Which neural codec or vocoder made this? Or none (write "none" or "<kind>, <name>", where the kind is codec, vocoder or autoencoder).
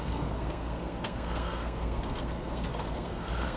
codec, SNAC